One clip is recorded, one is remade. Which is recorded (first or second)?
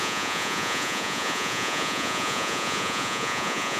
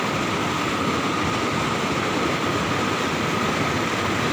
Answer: second